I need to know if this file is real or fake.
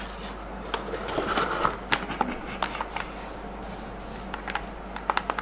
real